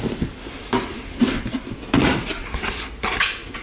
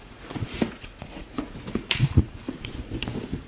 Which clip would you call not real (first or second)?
second